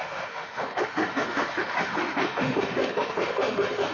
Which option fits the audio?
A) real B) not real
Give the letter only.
B